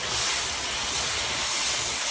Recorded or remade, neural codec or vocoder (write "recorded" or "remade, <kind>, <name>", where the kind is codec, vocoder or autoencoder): recorded